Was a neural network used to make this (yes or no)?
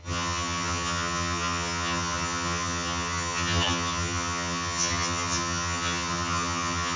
yes